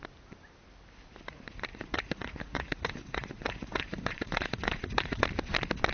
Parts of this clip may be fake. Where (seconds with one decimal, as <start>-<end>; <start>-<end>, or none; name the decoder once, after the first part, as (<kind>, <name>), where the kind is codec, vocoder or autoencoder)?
1.7-5.2 (vocoder, Vocos)